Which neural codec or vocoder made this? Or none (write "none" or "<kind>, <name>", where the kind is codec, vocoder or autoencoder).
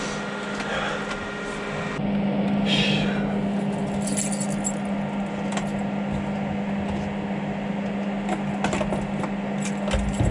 none